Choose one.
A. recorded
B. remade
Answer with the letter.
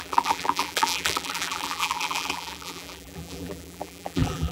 B